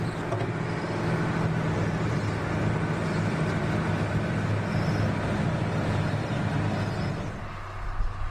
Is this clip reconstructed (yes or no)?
no